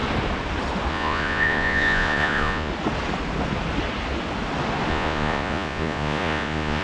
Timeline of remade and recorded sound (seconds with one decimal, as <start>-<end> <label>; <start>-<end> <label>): 0.0-0.9 recorded; 0.9-2.7 remade; 2.7-4.9 recorded; 4.9-6.8 remade